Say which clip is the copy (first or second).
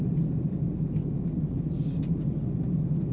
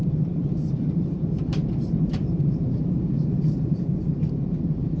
second